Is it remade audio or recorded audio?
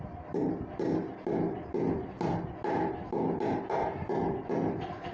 recorded